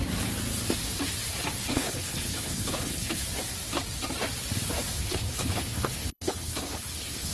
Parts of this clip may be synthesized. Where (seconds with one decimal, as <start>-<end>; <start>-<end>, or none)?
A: 1.7-3.2; 5.0-7.3